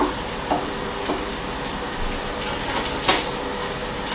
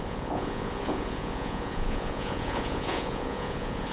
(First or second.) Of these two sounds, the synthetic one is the second